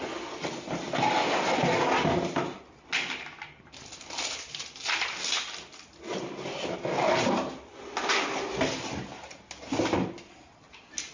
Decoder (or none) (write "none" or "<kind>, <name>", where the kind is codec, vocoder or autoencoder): none